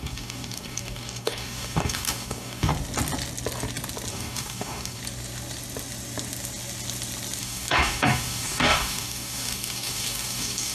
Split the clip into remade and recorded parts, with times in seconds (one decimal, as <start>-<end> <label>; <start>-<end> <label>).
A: 0.0-2.7 remade; 2.7-4.1 recorded; 4.1-5.0 remade; 5.0-7.4 recorded; 7.4-10.7 remade